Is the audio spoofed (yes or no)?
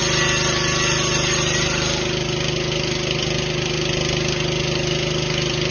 no